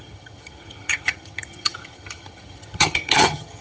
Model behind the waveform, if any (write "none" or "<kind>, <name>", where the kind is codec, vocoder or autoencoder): vocoder, HiFi-GAN